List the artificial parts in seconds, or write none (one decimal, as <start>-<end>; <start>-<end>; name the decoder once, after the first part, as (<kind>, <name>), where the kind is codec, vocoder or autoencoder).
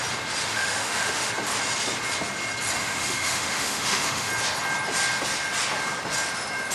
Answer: 0.4-1.3 (autoencoder, DAC-VAE); 2.8-4.3